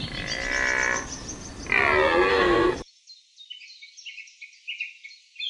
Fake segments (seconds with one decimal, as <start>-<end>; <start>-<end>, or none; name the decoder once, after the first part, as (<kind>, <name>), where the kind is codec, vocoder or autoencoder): 2.3-2.8 (codec, SNAC)